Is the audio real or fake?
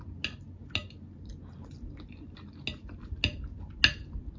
real